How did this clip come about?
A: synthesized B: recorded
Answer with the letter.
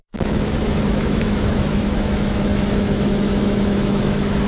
A